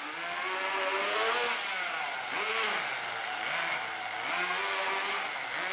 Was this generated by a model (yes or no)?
no